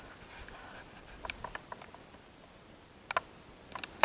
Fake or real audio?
real